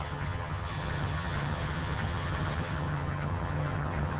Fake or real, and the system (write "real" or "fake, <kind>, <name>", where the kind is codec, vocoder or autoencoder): fake, vocoder, HiFi-GAN